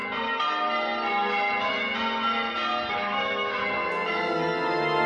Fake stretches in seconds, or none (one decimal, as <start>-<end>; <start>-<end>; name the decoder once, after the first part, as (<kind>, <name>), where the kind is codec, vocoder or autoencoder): 2.9-3.6 (autoencoder, DAC-VAE)